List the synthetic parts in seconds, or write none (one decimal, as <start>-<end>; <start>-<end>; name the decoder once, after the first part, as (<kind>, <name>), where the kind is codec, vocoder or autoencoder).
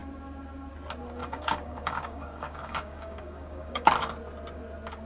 1.2-3.9 (codec, DAC)